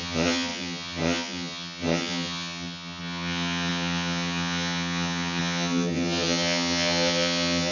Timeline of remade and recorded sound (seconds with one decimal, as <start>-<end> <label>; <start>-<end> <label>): 0.0-7.7 remade